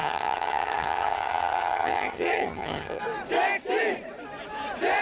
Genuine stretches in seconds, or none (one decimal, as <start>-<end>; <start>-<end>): 3.0-5.0